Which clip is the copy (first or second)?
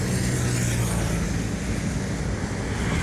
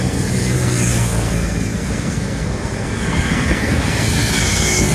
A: second